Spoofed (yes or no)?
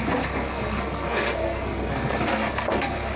yes